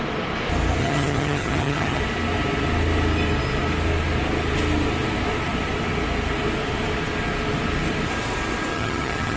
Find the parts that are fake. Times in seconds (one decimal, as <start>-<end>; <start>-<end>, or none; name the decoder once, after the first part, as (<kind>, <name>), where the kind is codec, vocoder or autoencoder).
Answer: 0.8-2.0 (vocoder, HiFi-GAN); 8.7-9.4